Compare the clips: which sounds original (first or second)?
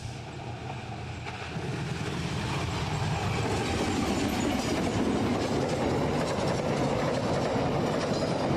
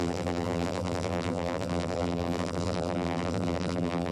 first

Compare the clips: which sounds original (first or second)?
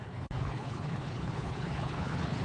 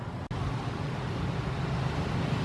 second